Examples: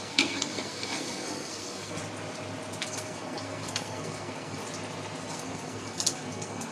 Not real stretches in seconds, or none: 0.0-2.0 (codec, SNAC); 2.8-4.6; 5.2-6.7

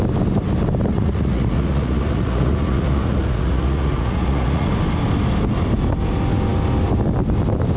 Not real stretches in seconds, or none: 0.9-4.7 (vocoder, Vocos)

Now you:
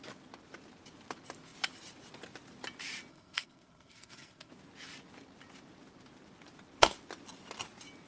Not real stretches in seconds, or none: 3.1-4.5 (codec, SNAC)

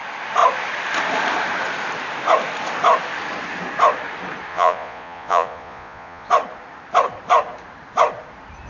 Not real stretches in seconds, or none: 4.5-6.3 (vocoder, Vocos)

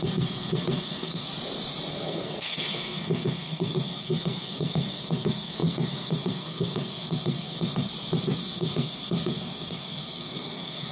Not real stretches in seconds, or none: 0.0-1.3 (codec, SNAC); 1.9-7.9; 8.4-10.9

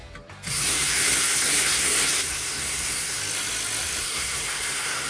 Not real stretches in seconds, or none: 0.5-3.2 (codec, SNAC); 4.0-5.1

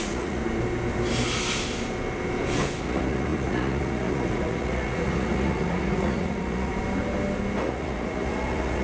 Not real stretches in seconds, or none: 0.0-0.4 (vocoder, Vocos); 2.8-6.7; 7.6-8.8

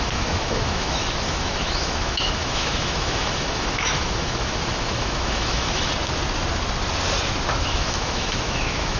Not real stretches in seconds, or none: 0.0-5.9 (autoencoder, DAC-VAE); 7.5-9.0